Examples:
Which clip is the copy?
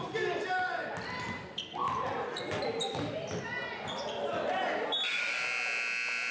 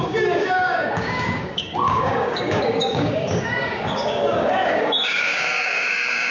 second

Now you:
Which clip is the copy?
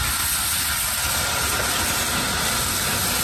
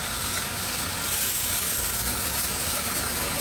second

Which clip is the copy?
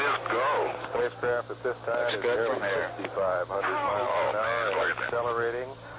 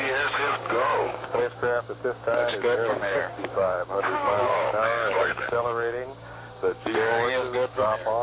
second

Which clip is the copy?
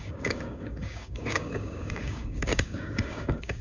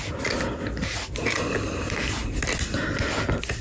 first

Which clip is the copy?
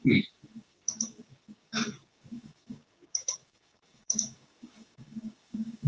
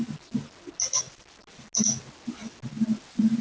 first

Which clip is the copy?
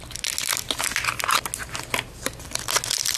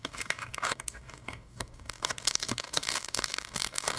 second